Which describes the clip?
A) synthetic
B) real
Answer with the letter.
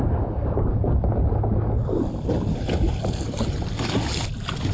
B